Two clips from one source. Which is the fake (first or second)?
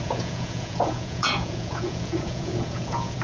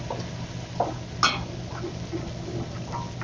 first